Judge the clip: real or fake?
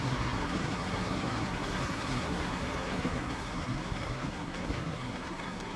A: fake